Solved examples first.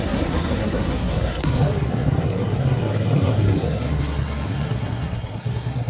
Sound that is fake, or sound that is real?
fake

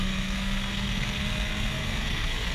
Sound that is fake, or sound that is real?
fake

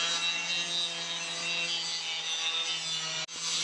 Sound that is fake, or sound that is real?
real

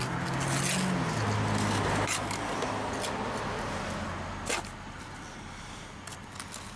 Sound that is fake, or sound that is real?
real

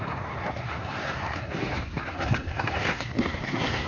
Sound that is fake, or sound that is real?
fake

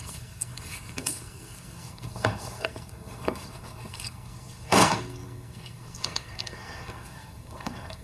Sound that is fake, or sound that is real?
fake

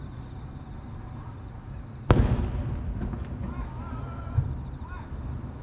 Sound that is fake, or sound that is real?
real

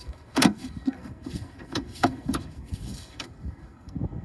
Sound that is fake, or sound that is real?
fake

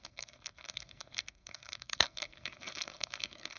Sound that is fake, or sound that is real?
fake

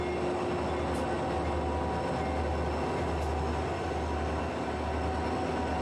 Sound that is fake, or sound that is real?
real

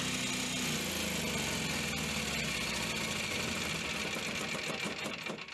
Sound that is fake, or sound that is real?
real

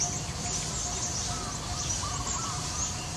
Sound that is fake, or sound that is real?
real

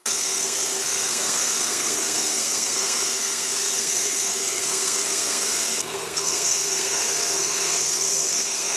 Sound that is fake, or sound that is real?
fake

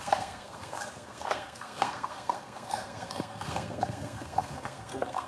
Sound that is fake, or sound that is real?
fake